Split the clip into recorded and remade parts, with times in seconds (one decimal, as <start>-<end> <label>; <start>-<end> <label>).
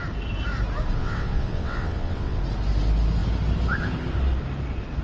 0.0-1.0 recorded; 1.0-2.4 remade; 2.4-5.0 recorded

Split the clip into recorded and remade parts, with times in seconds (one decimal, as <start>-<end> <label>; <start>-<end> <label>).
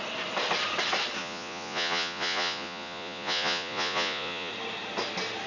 0.0-1.2 recorded; 1.2-4.5 remade; 4.5-5.5 recorded